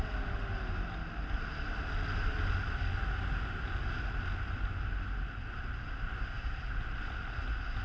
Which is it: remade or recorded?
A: recorded